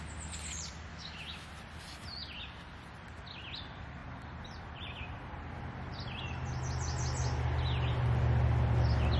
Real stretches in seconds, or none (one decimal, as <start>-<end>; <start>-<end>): 0.0-0.9; 1.5-9.2